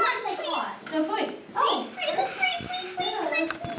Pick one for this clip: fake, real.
real